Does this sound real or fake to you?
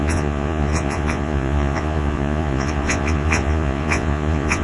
fake